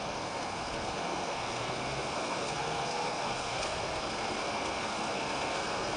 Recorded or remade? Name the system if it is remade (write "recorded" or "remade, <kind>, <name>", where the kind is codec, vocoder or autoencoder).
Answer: remade, codec, SNAC